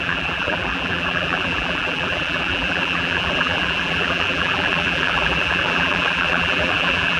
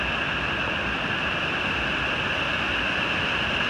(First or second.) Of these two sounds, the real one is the second